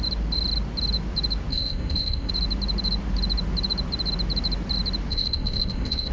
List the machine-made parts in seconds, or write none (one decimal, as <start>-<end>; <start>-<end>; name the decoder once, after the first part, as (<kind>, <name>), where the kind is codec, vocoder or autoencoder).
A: 1.5-2.3 (codec, ZipCodec); 5.1-6.1